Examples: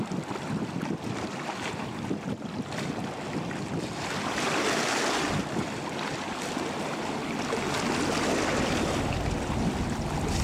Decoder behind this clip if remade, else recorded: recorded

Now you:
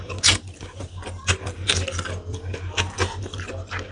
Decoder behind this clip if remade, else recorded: recorded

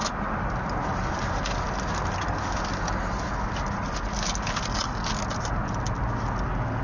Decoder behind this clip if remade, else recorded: recorded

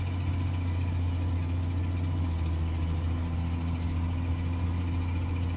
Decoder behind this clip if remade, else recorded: recorded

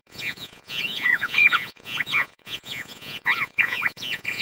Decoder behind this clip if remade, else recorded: remade, vocoder, Vocos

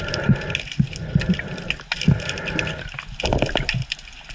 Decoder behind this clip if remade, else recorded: recorded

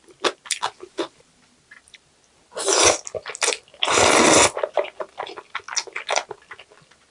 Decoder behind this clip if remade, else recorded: recorded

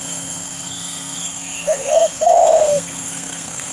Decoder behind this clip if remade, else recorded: remade, codec, SNAC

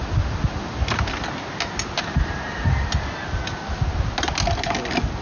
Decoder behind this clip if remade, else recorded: recorded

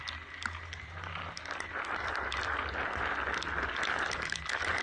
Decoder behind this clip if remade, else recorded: recorded